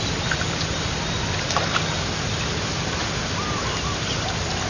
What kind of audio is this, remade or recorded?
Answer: recorded